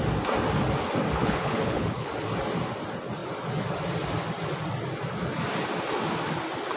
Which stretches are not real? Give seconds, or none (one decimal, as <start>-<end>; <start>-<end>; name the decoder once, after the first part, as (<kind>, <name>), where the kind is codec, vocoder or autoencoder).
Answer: 1.2-2.1 (codec, HILCodec)